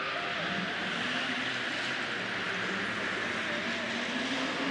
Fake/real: real